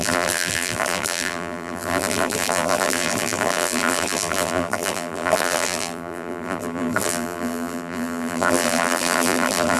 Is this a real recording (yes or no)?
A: no